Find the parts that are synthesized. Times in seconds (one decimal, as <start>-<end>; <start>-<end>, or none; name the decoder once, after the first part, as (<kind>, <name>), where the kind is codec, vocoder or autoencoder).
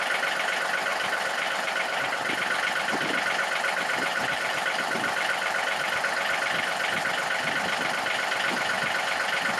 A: 0.9-2.0 (vocoder, BigVGAN v2); 4.1-6.0